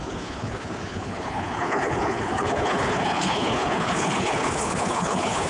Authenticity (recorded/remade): remade